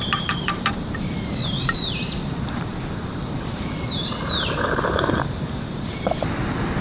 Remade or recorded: remade